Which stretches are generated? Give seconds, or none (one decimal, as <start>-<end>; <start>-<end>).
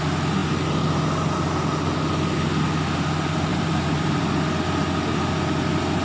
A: 3.5-4.3